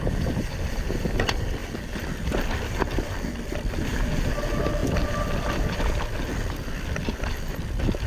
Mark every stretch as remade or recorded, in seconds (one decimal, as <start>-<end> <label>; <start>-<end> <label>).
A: 0.0-8.1 recorded